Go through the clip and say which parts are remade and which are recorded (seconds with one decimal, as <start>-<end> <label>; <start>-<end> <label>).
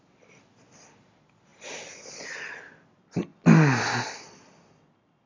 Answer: 0.0-5.3 recorded